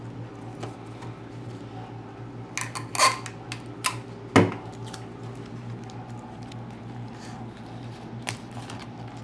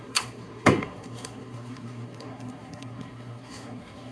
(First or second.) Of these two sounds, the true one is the first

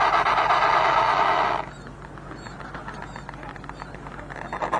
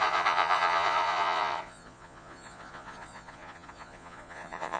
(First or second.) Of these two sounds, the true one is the first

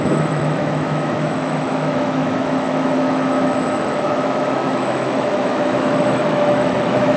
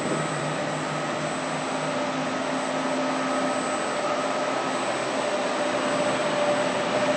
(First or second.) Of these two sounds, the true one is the second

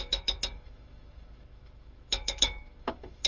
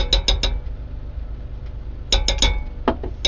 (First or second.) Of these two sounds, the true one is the second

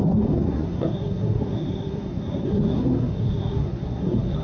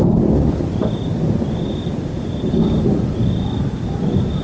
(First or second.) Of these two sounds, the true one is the second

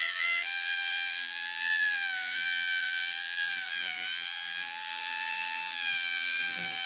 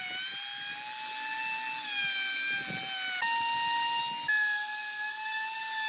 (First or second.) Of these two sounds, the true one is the second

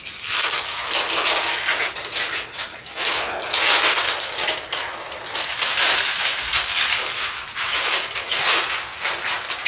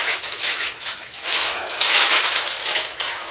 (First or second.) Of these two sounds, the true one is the first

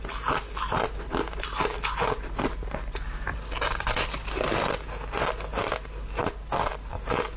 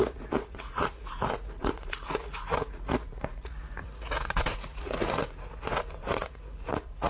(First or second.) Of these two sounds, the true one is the first